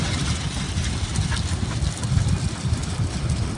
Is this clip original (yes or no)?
yes